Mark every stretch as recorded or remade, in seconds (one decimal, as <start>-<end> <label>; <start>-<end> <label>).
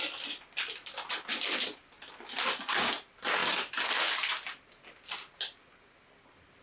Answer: 0.0-6.6 recorded